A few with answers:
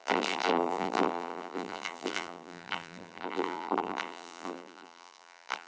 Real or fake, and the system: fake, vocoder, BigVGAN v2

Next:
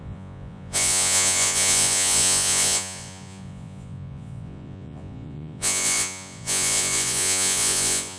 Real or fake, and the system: fake, vocoder, Vocos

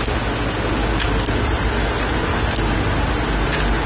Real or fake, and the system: real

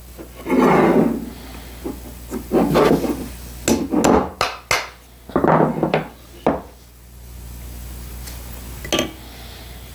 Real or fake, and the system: real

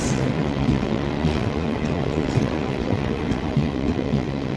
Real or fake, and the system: fake, vocoder, WaveNeXt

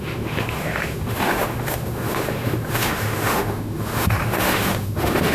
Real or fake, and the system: fake, autoencoder, DAC-VAE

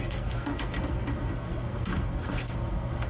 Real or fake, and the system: fake, codec, SNAC